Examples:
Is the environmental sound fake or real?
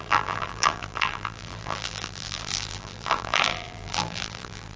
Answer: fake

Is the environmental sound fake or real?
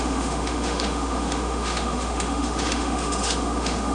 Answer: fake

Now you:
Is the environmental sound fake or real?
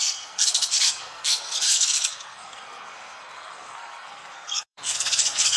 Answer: fake